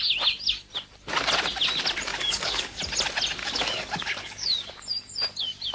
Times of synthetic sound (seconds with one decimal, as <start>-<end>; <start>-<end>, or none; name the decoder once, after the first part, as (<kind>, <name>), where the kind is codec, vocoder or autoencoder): 2.1-2.8 (codec, DAC); 3.4-4.7